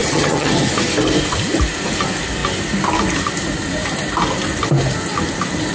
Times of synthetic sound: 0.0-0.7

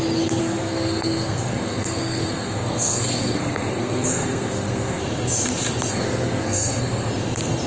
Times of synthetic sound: 0.4-5.0; 5.9-7.1

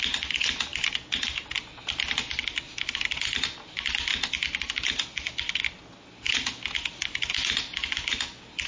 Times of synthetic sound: none

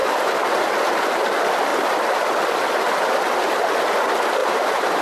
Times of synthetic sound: 0.0-1.1; 4.4-5.0

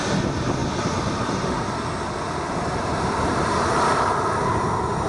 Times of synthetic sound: none

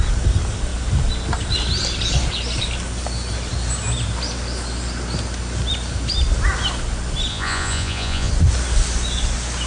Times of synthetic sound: 7.3-8.3

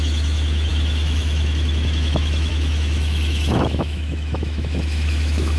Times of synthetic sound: 0.0-5.6

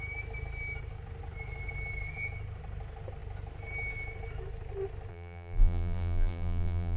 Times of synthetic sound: 5.1-7.0